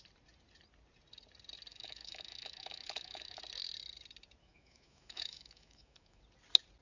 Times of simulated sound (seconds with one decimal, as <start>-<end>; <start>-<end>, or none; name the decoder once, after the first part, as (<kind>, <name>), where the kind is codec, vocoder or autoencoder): 1.7-3.4 (autoencoder, DAC-VAE); 4.4-6.2